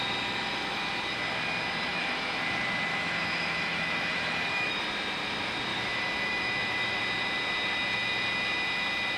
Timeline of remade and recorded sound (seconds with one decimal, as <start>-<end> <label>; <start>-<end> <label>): 0.0-1.9 recorded; 1.9-2.4 remade; 2.4-2.9 recorded; 2.9-4.8 remade; 4.8-5.7 recorded; 5.7-7.0 remade; 7.0-9.2 recorded